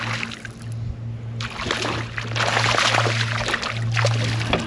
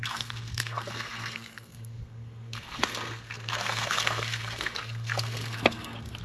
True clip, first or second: first